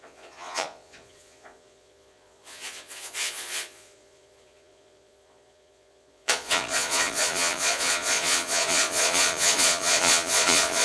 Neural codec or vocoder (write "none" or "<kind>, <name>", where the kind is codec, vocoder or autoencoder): vocoder, Vocos